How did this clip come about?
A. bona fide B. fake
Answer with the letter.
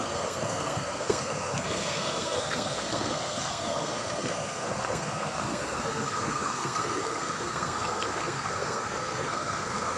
B